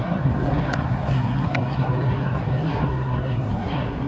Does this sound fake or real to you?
fake